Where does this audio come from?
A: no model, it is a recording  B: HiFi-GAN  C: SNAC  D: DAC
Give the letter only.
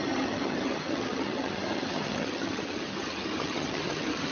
B